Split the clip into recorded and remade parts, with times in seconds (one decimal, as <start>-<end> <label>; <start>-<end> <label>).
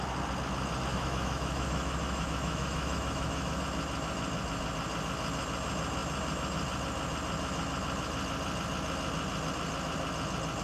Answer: 0.0-0.9 recorded; 0.9-3.6 remade; 3.6-10.6 recorded